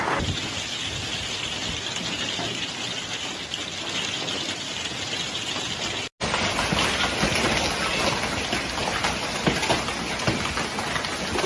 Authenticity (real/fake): real